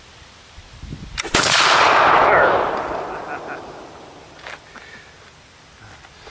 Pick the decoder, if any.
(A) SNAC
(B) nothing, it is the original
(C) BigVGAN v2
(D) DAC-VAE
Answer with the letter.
B